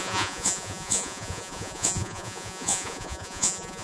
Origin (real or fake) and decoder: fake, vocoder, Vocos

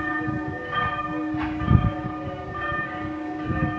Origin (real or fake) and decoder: fake, codec, DAC